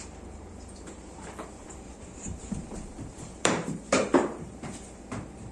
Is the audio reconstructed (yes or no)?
yes